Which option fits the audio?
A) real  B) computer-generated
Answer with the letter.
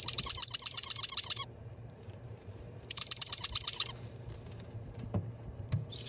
B